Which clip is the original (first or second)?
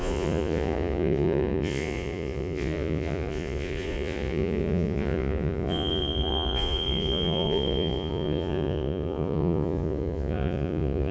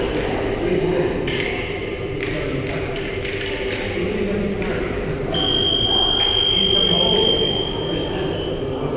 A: second